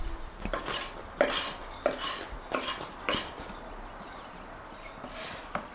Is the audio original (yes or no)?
yes